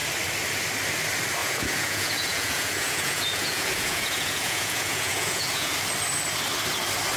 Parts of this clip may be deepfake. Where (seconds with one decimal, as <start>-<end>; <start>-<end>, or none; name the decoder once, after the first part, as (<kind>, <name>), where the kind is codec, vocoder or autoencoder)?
1.4-5.7 (vocoder, Vocos)